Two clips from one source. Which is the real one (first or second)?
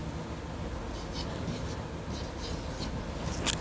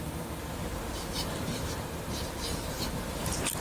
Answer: first